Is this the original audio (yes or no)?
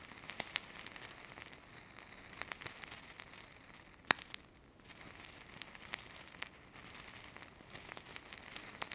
yes